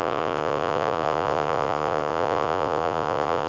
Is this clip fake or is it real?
fake